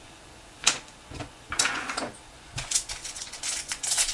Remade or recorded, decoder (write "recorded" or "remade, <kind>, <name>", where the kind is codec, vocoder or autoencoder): remade, vocoder, Vocos